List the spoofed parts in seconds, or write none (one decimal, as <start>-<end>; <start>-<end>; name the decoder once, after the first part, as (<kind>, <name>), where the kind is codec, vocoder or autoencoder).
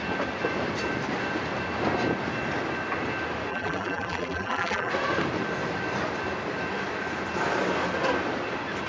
3.5-4.9 (vocoder, BigVGAN v2)